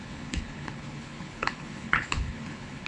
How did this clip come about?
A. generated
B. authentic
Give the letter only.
A